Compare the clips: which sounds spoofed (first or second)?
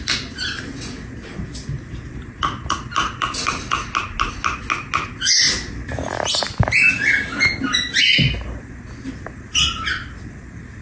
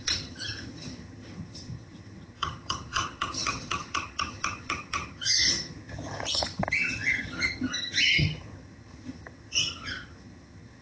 second